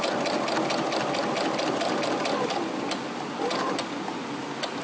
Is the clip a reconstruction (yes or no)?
no